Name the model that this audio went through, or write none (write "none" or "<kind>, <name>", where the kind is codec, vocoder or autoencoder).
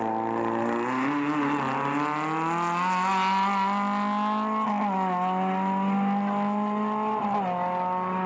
none